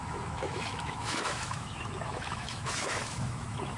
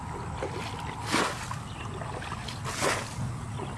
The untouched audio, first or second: second